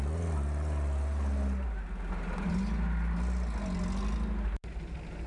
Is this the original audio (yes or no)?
yes